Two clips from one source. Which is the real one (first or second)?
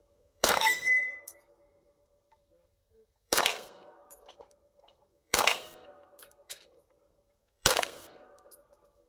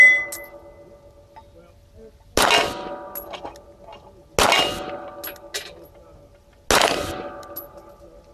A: second